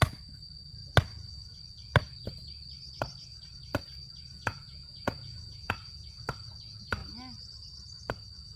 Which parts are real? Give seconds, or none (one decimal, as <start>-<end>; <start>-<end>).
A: 0.0-4.3; 6.2-8.6